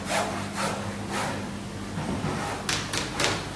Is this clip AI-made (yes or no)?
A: no